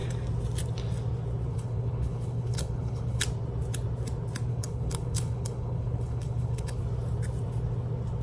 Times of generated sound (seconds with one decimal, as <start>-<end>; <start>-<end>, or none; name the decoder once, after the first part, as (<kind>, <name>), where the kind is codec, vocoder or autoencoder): 1.5-3.2 (codec, HILCodec); 4.5-6.8